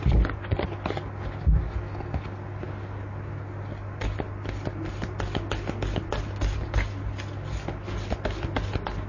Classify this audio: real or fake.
real